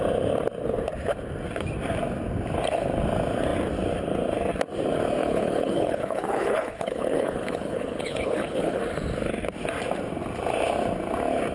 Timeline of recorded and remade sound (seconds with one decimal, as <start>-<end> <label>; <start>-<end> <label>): 0.0-5.2 recorded; 5.2-8.8 remade; 8.8-11.5 recorded